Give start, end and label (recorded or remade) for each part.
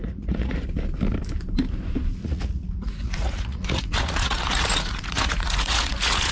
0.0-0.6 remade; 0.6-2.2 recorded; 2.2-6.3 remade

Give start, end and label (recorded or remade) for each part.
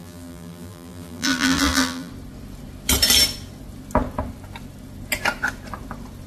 0.0-2.1 remade; 2.1-6.3 recorded